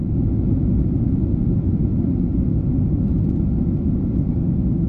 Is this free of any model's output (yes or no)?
yes